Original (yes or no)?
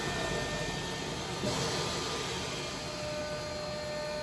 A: yes